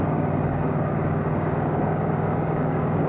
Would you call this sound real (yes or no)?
no